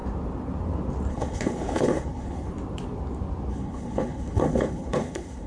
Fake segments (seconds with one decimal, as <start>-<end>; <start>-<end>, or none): 1.1-2.5; 3.5-5.5